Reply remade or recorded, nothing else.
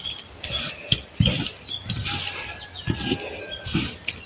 recorded